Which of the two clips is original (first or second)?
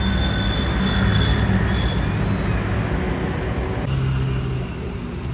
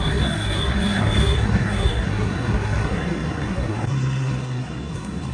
first